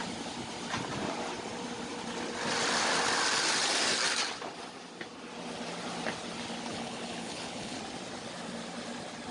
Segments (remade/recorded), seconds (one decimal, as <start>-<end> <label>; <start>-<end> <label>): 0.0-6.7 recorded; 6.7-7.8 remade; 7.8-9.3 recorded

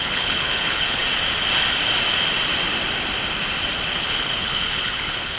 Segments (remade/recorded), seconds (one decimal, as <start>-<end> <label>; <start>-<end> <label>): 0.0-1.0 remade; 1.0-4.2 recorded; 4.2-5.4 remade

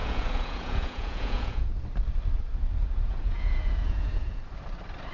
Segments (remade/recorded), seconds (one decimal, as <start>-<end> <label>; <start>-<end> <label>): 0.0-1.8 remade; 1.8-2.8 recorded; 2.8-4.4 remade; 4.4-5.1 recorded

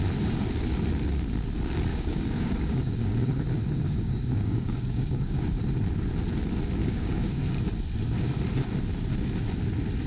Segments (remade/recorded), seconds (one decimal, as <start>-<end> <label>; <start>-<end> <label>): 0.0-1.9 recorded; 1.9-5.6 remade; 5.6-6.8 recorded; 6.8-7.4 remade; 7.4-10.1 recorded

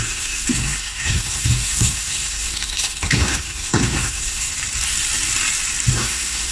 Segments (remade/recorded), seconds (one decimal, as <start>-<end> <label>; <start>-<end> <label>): 0.0-4.5 remade; 4.5-5.9 recorded; 5.9-6.5 remade

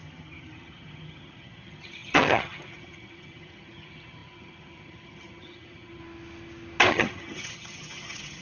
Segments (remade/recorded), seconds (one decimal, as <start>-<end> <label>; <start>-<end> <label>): 0.0-6.0 remade; 6.0-6.9 recorded; 6.9-8.4 remade

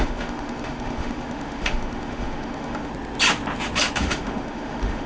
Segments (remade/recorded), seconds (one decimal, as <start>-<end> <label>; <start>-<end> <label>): 0.0-2.9 remade; 2.9-4.0 recorded; 4.0-5.1 remade